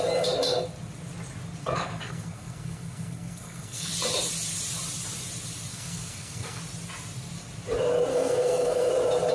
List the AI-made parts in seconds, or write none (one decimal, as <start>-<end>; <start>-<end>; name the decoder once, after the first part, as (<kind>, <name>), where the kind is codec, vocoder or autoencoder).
1.6-3.9 (codec, SNAC); 5.7-6.6; 8.1-8.9